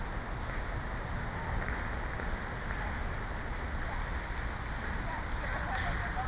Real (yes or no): yes